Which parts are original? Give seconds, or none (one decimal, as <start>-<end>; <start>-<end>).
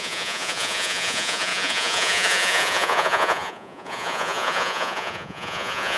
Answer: none